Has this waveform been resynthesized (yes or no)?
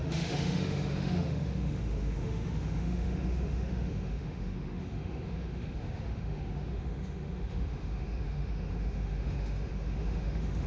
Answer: yes